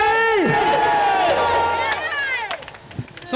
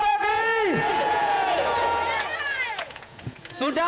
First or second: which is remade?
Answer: second